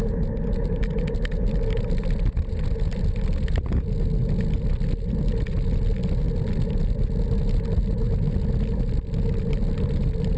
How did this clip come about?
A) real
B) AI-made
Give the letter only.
A